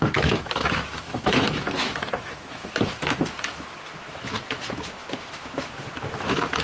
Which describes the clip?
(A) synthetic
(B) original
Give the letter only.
A